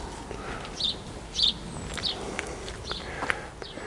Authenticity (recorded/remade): recorded